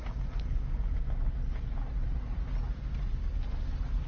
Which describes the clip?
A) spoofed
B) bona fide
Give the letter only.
B